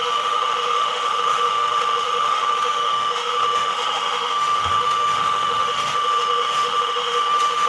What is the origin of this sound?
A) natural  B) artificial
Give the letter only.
B